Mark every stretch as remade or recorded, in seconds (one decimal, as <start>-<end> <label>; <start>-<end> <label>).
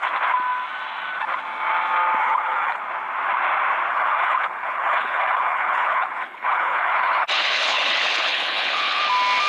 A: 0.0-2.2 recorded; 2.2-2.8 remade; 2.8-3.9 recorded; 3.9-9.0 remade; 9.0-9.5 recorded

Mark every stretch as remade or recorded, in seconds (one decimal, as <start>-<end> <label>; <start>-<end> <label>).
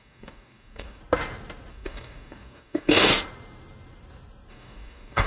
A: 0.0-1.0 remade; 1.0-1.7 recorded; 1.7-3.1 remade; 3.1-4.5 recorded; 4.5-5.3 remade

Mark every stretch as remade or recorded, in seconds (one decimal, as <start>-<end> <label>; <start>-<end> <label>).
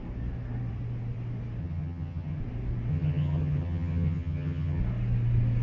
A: 0.0-1.6 recorded; 1.6-2.4 remade; 2.4-2.9 recorded; 2.9-4.8 remade; 4.8-5.6 recorded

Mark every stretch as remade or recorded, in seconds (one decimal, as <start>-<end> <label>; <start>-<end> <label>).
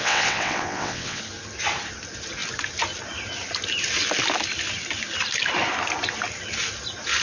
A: 0.0-1.2 remade; 1.2-7.2 recorded